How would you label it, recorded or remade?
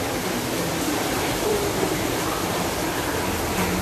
remade